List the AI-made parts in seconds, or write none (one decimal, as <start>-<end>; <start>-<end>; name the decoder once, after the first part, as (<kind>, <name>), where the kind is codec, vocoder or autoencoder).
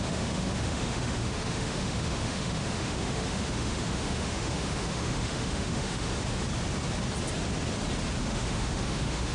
0.0-6.1 (autoencoder, DAC-VAE); 8.2-9.3